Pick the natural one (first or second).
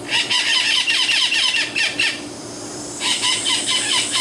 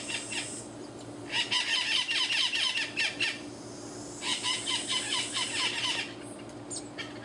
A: second